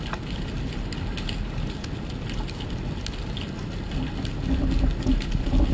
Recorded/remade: recorded